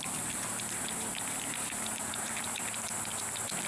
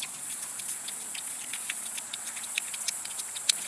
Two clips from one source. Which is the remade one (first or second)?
second